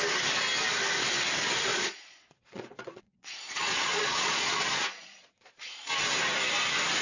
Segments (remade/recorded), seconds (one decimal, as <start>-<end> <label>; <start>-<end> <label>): 0.0-1.7 recorded; 1.7-5.9 remade; 5.9-7.0 recorded